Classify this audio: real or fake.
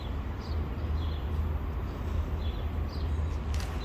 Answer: real